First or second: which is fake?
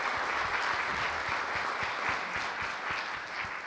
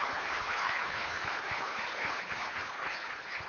second